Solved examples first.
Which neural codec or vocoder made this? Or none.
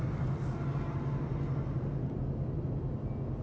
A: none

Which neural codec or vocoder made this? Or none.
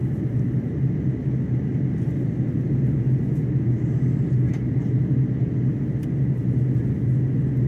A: none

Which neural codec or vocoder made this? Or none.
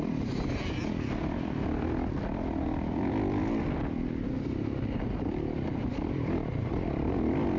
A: vocoder, BigVGAN v2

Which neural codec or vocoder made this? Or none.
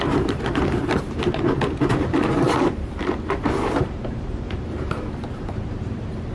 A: vocoder, BigVGAN v2